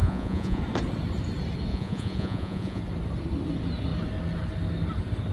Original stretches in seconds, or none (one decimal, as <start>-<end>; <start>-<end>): 0.6-1.7; 2.8-5.3